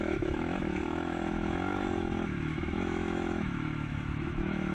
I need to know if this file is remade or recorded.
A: remade